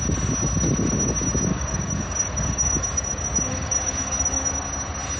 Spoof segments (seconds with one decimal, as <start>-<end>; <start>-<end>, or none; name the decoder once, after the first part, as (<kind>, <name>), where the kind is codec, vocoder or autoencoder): 1.5-4.6 (codec, DAC)

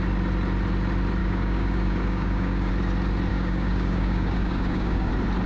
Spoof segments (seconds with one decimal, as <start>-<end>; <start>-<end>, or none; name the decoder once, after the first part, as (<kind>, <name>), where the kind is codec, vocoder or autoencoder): 1.2-2.7 (codec, DAC); 3.3-5.1

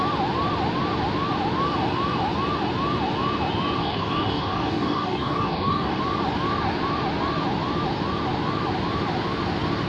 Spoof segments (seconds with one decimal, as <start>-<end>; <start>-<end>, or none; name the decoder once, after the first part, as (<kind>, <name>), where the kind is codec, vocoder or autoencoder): 3.8-6.0 (codec, DAC)